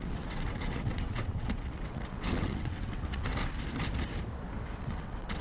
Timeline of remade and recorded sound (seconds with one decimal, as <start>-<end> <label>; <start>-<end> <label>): 0.0-3.3 remade; 3.3-4.8 recorded; 4.8-5.4 remade